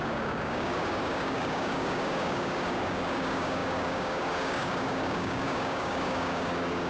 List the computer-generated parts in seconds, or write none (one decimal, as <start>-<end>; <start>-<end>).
0.0-6.9